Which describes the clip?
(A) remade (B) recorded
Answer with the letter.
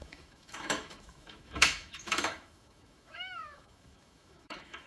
A